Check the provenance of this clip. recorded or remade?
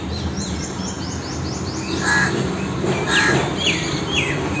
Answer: recorded